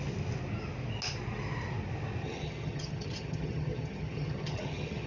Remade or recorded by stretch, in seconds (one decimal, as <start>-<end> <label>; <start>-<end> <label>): 0.0-2.2 recorded; 2.2-5.1 remade